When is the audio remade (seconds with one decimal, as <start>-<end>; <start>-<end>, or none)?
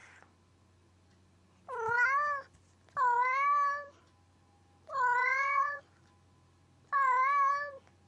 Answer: 5.2-5.8